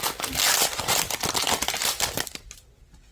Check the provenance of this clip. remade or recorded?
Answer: recorded